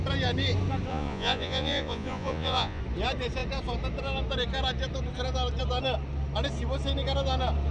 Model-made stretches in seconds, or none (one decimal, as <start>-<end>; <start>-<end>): 0.9-2.8